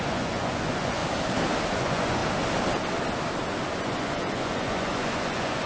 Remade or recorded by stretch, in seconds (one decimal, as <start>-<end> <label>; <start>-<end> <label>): 0.0-1.0 remade; 1.0-1.7 recorded; 1.7-2.2 remade; 2.2-3.8 recorded; 3.8-5.7 remade